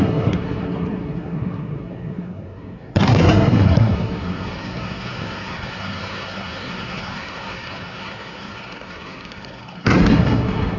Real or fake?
fake